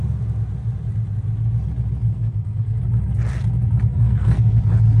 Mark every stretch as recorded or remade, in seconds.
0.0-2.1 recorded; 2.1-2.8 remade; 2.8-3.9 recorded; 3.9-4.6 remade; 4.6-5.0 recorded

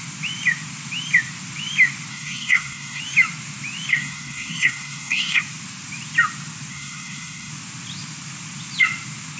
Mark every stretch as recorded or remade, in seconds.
0.0-2.1 recorded; 2.1-3.0 remade; 3.0-3.9 recorded; 3.9-5.4 remade; 5.4-6.7 recorded; 6.7-7.5 remade; 7.5-9.4 recorded

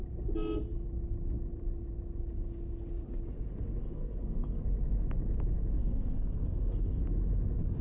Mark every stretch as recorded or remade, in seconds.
0.0-3.8 recorded; 3.8-4.6 remade; 4.6-5.8 recorded; 5.8-7.0 remade; 7.0-7.8 recorded

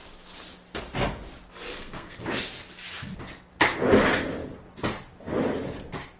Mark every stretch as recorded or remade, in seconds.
0.0-1.7 recorded; 1.7-2.2 remade; 2.2-6.2 recorded

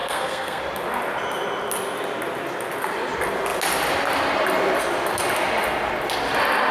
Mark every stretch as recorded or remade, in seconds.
0.0-0.6 remade; 0.6-6.7 recorded